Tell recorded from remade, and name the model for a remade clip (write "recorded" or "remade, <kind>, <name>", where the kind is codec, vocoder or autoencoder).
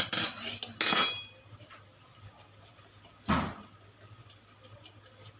recorded